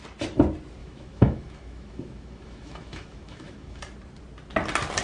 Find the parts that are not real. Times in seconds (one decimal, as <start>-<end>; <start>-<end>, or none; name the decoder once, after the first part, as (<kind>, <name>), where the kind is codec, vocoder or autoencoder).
0.8-3.8 (autoencoder, DAC-VAE)